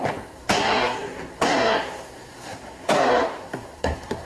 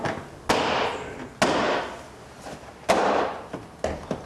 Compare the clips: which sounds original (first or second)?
second